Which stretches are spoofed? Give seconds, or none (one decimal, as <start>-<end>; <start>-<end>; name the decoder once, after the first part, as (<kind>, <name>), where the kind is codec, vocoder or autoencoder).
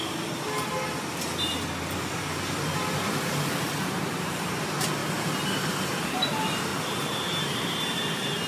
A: 3.5-5.0 (vocoder, BigVGAN v2); 5.7-8.5